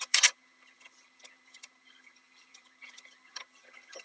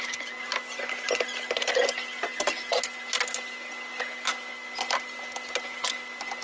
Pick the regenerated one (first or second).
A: first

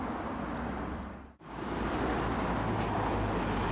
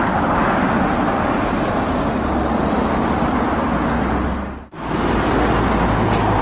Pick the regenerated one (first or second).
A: first